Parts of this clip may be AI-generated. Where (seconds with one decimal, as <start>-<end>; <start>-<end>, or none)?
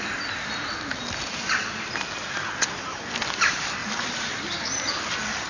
none